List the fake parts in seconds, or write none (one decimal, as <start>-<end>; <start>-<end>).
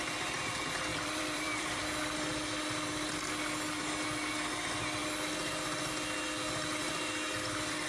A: 0.9-1.8